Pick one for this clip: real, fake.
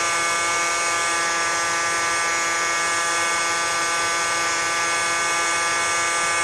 real